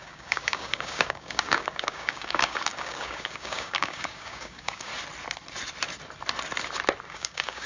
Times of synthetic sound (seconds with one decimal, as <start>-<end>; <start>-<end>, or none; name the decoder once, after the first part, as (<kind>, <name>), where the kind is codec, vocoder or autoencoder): 0.0-4.9 (codec, DAC); 7.1-7.7